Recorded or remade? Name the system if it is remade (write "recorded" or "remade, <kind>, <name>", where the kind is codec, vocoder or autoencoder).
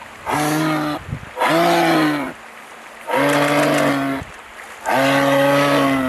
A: recorded